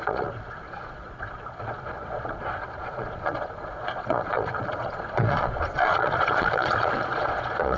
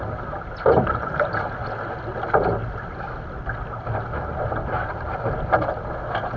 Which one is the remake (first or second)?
first